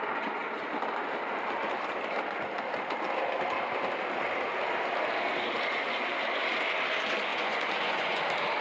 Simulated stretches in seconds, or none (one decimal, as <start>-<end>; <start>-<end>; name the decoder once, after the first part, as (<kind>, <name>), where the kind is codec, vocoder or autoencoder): 7.3-8.2 (vocoder, Vocos)